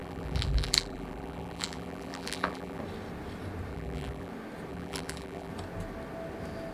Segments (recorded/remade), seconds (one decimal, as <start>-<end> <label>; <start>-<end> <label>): 0.0-2.8 remade; 2.8-3.7 recorded; 3.7-4.3 remade; 4.3-4.7 recorded; 4.7-5.5 remade; 5.5-6.7 recorded